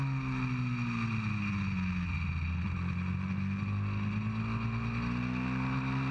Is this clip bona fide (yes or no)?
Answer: yes